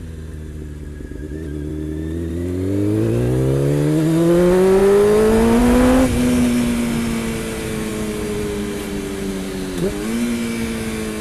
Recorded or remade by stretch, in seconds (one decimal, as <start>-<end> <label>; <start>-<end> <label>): 0.0-1.7 recorded; 1.7-2.3 remade; 2.3-11.2 recorded

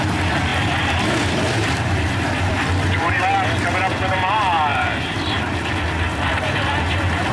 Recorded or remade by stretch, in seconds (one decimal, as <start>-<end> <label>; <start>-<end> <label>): 0.0-0.5 recorded; 0.5-3.2 remade; 3.2-4.7 recorded; 4.7-6.3 remade; 6.3-7.3 recorded

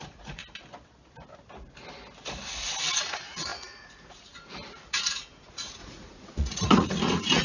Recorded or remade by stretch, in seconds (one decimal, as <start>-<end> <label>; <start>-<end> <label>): 0.0-0.4 remade; 0.4-3.0 recorded; 3.0-7.4 remade